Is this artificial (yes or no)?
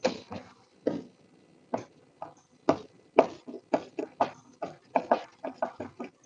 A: no